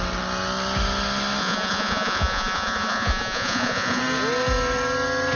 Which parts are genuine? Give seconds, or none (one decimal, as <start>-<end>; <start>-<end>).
0.0-1.4; 4.0-5.4